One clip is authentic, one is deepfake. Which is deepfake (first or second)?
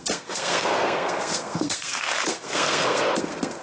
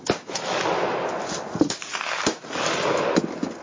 first